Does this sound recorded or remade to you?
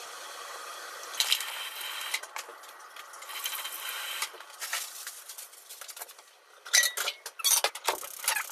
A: recorded